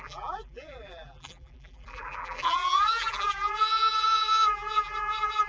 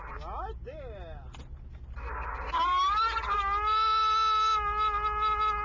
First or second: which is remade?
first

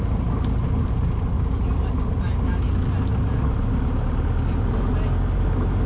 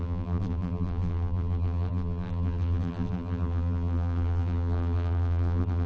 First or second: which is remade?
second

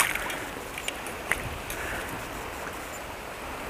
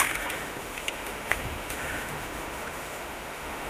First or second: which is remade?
second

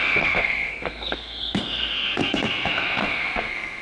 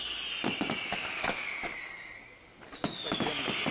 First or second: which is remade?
first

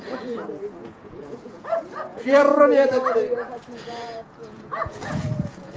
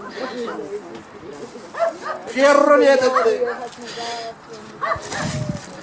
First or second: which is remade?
first